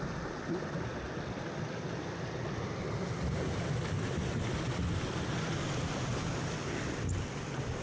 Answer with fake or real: real